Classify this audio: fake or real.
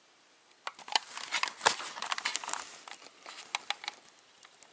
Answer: real